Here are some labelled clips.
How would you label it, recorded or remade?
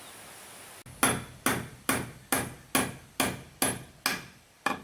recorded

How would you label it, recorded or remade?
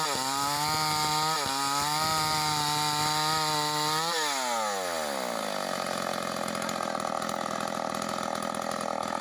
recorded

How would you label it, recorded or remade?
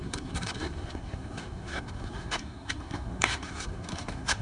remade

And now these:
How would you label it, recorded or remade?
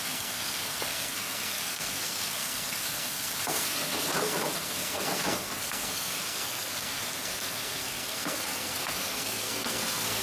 remade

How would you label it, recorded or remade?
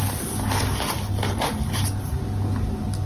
recorded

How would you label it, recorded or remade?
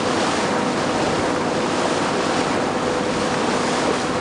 recorded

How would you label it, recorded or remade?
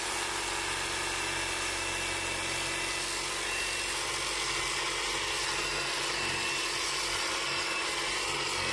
recorded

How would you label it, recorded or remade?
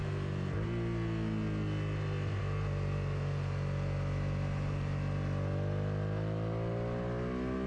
recorded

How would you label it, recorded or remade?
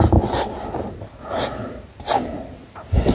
recorded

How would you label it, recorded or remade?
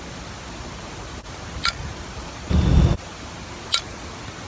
recorded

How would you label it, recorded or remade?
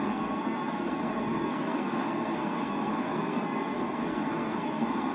remade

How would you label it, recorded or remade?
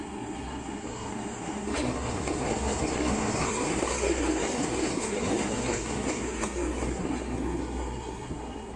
remade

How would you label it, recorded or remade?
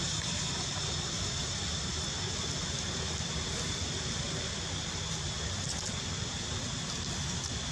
recorded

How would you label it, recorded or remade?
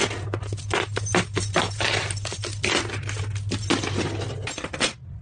recorded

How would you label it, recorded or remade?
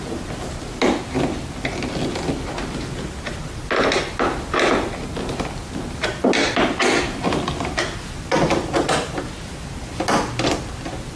recorded